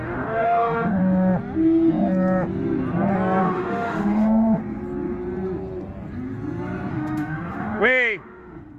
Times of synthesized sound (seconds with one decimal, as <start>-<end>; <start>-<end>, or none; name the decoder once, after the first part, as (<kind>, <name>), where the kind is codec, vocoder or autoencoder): 0.0-1.0 (autoencoder, DAC-VAE); 3.4-4.6; 6.9-8.8